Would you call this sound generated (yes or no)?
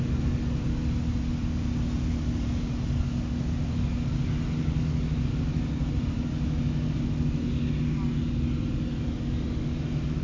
no